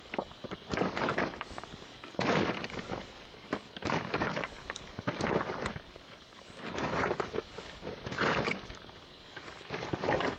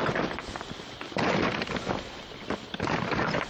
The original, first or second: second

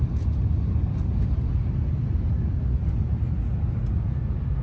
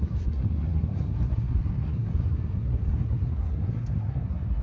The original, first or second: first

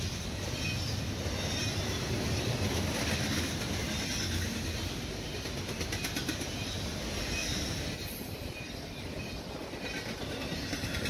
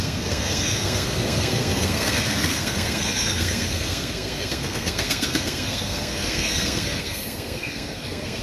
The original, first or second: first